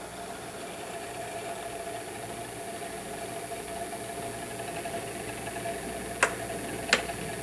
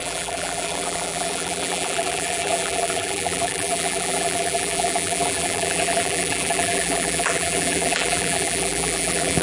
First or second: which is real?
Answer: first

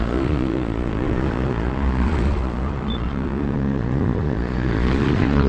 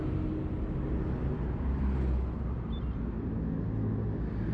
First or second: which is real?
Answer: second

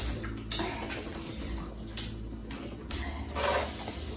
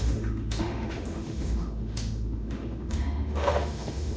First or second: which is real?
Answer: first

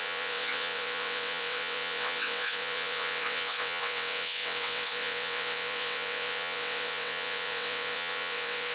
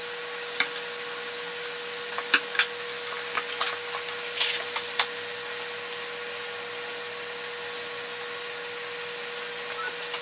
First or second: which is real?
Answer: second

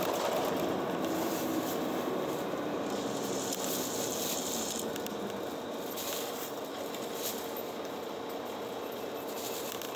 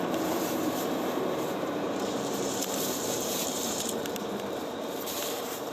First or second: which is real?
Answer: first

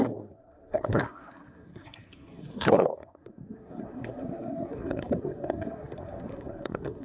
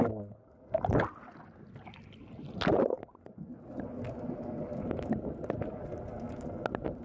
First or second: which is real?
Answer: second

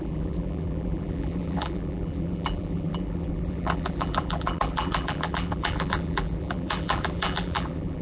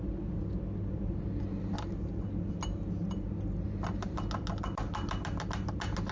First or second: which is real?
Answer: second